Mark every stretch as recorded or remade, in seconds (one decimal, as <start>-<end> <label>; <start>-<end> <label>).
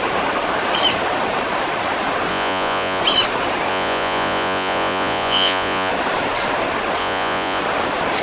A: 0.0-2.3 recorded; 2.3-3.0 remade; 3.0-3.7 recorded; 3.7-5.9 remade; 5.9-7.0 recorded; 7.0-7.6 remade; 7.6-8.2 recorded